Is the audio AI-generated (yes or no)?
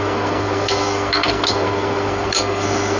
yes